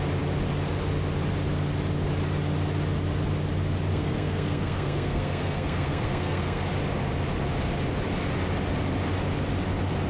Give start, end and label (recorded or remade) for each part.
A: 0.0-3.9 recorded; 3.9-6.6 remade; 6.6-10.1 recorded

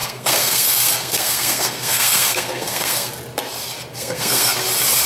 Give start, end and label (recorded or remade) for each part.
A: 0.0-3.1 remade; 3.1-3.9 recorded; 3.9-4.5 remade; 4.5-5.1 recorded

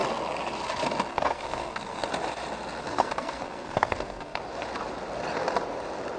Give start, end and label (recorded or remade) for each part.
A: 0.0-1.1 recorded; 1.1-2.1 remade; 2.1-2.8 recorded; 2.8-4.4 remade; 4.4-6.2 recorded

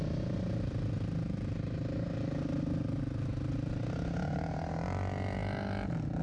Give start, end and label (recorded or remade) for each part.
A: 0.0-6.2 recorded

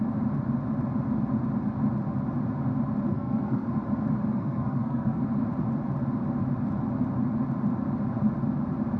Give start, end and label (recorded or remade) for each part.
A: 0.0-3.1 recorded; 3.1-3.7 remade; 3.7-4.3 recorded; 4.3-5.2 remade; 5.2-9.0 recorded

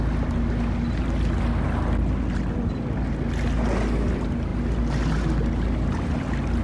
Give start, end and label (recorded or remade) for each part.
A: 0.0-6.6 recorded

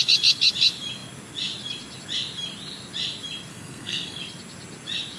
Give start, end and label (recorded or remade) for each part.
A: 0.0-3.5 recorded; 3.5-4.2 remade; 4.2-5.2 recorded